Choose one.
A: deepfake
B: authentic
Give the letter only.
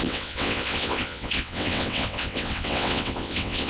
A